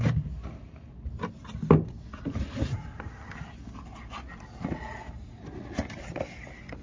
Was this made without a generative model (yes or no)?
yes